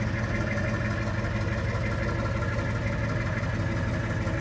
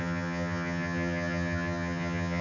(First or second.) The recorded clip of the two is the first